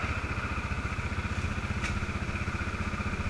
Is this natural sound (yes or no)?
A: yes